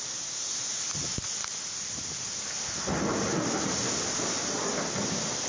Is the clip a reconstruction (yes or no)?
no